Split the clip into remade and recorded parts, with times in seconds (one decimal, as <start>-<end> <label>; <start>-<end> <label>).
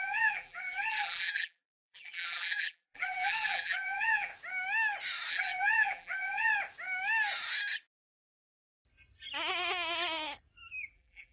0.0-4.3 remade; 4.3-5.3 recorded; 5.3-6.5 remade; 6.5-10.9 recorded; 10.9-11.3 remade